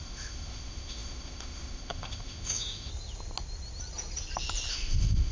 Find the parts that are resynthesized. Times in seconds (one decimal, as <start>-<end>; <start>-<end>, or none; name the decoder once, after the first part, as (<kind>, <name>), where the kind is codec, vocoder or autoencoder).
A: 0.0-2.9 (autoencoder, DAC-VAE); 4.7-5.3